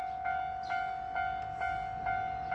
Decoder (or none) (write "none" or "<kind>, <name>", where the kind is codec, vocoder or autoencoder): none